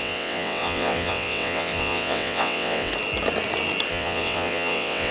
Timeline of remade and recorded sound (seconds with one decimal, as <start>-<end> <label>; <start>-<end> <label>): 0.0-2.9 remade; 2.9-3.9 recorded; 3.9-5.1 remade